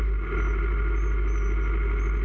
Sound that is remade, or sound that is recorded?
recorded